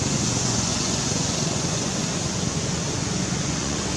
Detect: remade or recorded remade